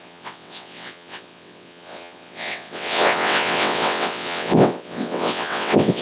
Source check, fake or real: fake